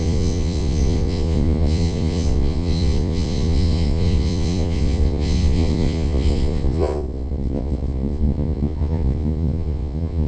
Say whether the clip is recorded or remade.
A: remade